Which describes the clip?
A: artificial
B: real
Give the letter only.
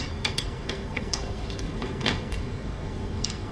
A